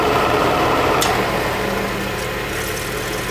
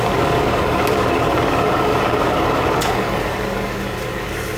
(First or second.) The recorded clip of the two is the first